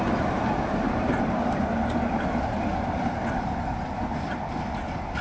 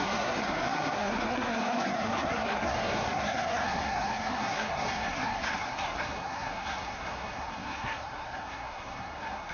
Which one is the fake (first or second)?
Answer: second